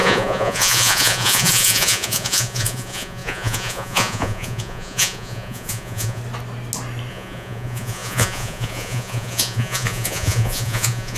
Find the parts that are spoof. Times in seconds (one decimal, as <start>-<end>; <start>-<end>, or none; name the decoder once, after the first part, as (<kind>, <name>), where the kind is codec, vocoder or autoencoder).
0.0-6.2 (vocoder, Vocos); 7.1-11.2